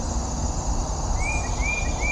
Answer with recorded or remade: recorded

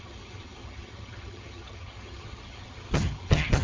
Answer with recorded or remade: remade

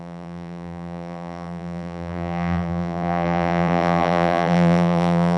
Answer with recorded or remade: remade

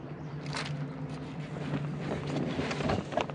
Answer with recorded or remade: recorded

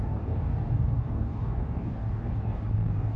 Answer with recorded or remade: remade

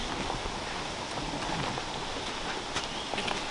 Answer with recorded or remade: recorded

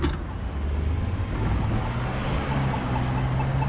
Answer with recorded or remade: recorded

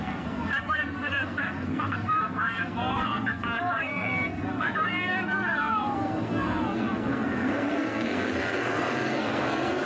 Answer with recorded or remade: remade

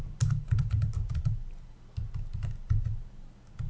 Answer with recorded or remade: recorded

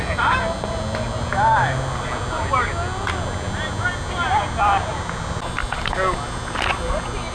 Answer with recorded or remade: recorded